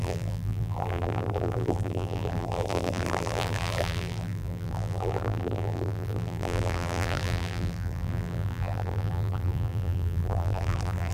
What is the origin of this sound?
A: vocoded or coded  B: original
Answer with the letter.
A